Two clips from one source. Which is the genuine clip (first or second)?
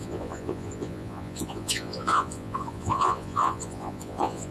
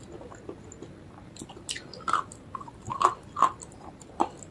second